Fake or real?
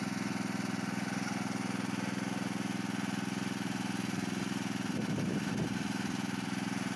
real